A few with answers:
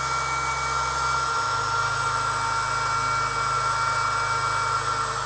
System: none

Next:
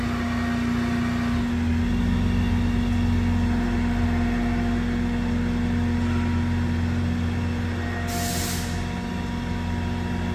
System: none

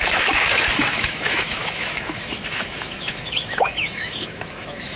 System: autoencoder, DAC-VAE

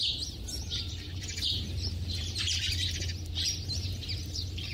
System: vocoder, BigVGAN v2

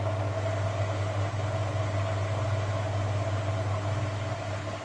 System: none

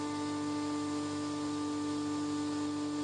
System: none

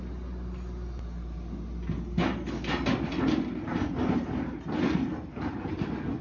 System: none